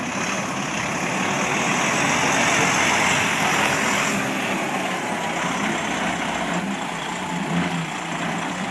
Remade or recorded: recorded